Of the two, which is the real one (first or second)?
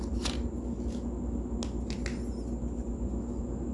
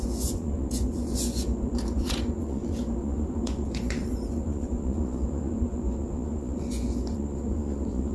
first